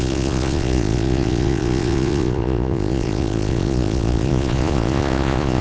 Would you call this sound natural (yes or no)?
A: no